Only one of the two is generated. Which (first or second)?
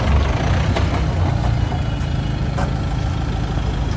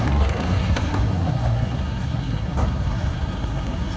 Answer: second